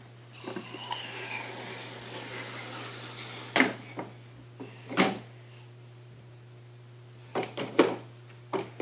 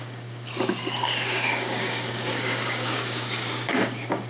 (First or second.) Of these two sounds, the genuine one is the first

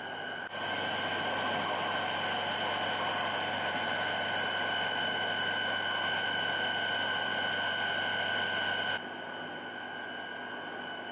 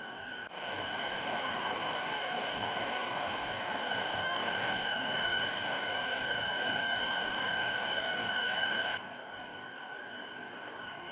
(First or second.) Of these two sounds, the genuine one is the first